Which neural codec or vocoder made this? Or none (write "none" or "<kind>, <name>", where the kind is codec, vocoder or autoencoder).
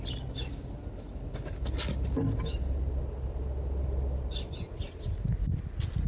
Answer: none